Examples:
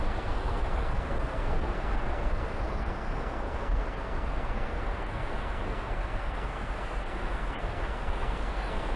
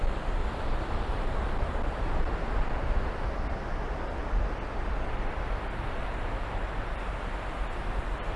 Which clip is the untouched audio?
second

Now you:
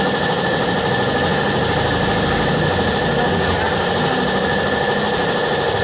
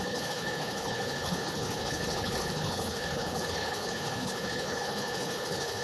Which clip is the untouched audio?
first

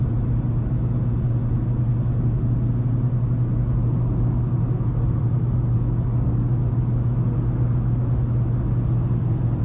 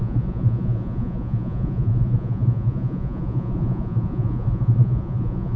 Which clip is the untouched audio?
first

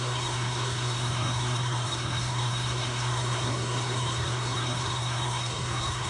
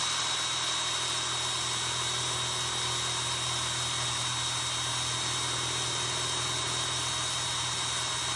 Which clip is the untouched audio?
second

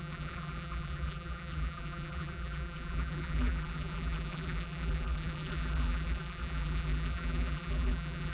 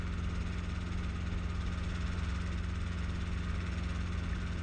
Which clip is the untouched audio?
second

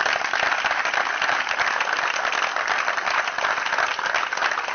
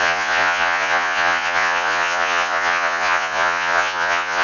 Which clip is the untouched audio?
first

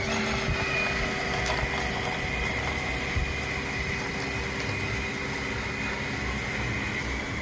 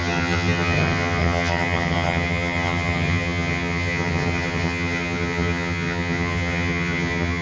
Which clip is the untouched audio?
first